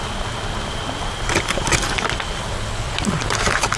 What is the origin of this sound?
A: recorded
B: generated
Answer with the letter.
B